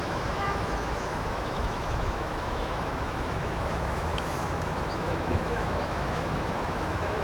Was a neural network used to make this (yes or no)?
yes